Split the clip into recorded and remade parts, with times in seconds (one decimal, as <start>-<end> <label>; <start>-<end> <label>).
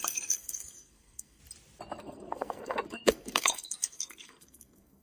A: 0.0-1.4 remade; 1.4-2.0 recorded; 2.0-5.0 remade